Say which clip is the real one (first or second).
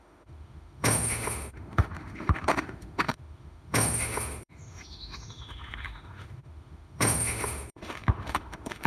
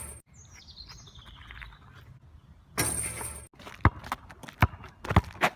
second